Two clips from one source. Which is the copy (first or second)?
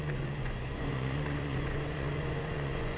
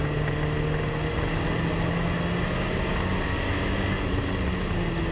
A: first